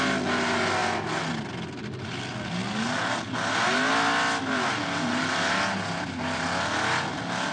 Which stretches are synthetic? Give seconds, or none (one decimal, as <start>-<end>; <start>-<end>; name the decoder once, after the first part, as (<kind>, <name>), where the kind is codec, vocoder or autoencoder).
none